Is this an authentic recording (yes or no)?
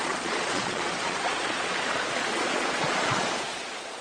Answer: no